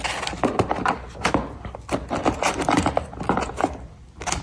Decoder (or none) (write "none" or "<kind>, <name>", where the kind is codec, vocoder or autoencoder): none